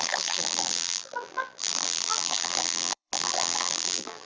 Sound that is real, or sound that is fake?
fake